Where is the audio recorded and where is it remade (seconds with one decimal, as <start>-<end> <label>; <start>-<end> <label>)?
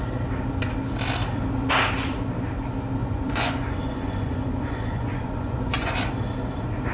0.0-3.0 recorded; 3.0-5.9 remade; 5.9-6.9 recorded